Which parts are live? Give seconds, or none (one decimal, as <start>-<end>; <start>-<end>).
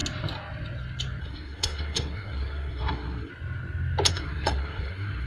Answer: 0.0-1.2; 3.3-4.1